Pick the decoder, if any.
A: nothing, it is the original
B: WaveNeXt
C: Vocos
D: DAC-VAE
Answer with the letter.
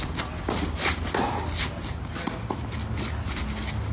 A